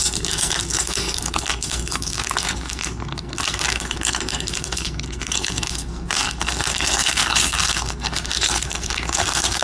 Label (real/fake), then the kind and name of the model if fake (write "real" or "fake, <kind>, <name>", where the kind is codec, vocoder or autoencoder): fake, codec, SNAC